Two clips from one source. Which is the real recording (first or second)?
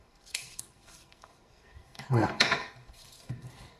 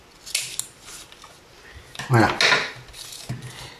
second